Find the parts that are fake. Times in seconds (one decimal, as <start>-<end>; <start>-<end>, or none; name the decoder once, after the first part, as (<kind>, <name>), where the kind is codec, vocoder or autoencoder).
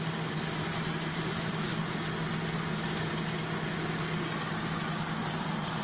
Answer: 0.0-1.7 (vocoder, BigVGAN v2); 5.2-5.8